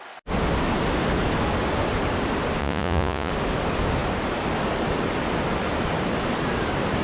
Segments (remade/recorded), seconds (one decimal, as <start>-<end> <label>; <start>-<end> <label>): 0.0-2.6 recorded; 2.6-3.3 remade; 3.3-7.0 recorded